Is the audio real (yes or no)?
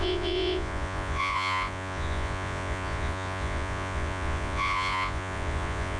no